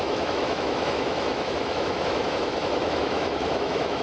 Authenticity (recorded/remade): remade